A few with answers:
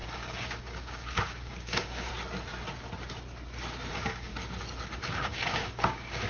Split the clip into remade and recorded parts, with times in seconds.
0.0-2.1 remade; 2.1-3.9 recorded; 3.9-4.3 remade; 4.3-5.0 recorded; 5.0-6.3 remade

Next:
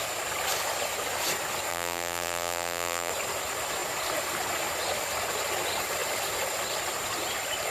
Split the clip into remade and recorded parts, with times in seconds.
0.0-1.7 recorded; 1.7-3.1 remade; 3.1-7.7 recorded

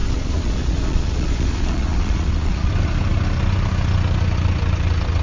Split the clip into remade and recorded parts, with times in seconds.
0.0-2.7 remade; 2.7-5.2 recorded

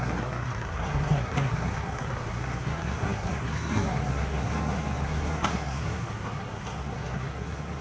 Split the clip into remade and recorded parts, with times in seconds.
0.0-7.8 remade

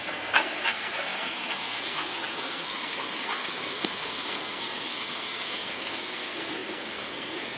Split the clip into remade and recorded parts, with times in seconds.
0.0-7.6 remade

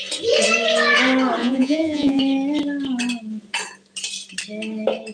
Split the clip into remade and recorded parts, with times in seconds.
0.0-1.4 recorded; 1.4-2.2 remade; 2.2-5.1 recorded

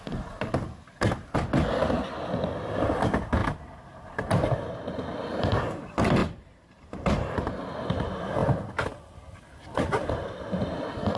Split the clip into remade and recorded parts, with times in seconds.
0.0-3.4 recorded; 3.4-4.8 remade; 4.8-6.2 recorded; 6.2-7.5 remade; 7.5-11.2 recorded

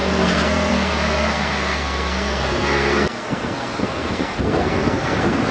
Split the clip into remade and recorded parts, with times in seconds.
0.0-5.5 remade